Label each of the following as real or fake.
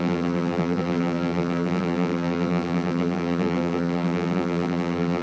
fake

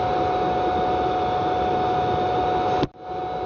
real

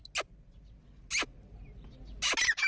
real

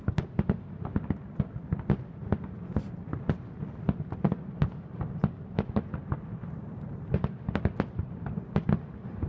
real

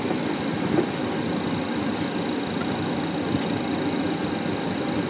real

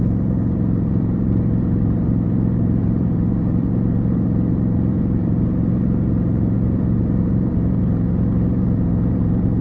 fake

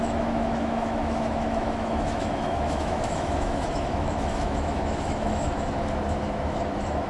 fake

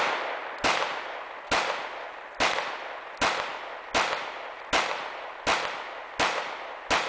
real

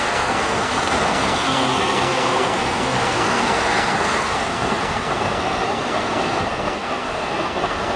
fake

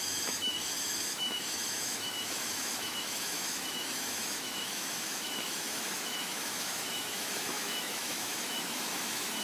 fake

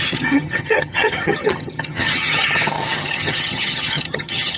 fake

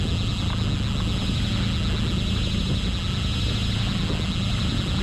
real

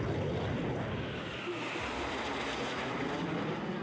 real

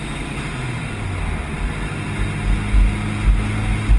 real